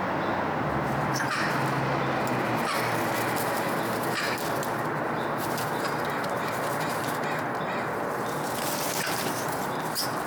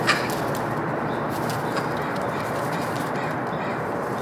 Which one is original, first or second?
first